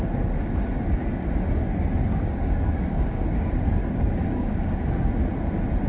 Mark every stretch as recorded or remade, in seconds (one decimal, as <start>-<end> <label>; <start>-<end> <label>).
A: 0.0-2.0 recorded; 2.0-3.4 remade; 3.4-3.8 recorded; 3.8-5.1 remade; 5.1-5.9 recorded